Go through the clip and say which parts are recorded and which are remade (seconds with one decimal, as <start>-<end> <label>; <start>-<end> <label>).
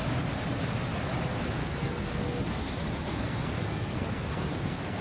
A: 0.0-1.6 recorded; 1.6-2.2 remade; 2.2-3.1 recorded; 3.1-5.0 remade